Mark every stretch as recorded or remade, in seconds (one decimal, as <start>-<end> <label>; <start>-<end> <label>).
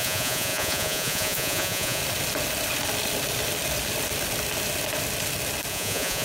0.0-2.0 remade; 2.0-5.7 recorded; 5.7-6.2 remade